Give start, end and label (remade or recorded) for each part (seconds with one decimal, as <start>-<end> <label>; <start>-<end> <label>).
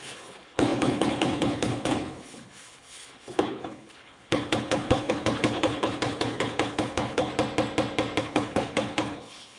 0.0-7.3 remade; 7.3-8.2 recorded; 8.2-9.6 remade